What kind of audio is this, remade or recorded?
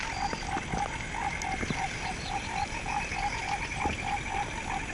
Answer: recorded